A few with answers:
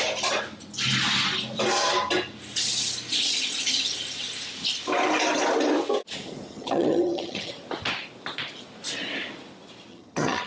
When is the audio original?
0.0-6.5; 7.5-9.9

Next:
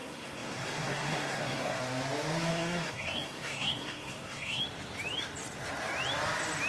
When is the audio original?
1.8-2.5; 4.6-6.7